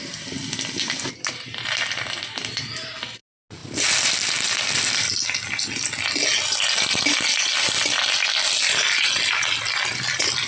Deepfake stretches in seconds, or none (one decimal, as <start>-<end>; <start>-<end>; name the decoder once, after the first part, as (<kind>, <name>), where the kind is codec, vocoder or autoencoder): 3.6-5.2 (vocoder, BigVGAN v2)